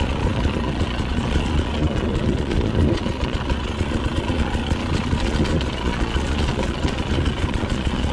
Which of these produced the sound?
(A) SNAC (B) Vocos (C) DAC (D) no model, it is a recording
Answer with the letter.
B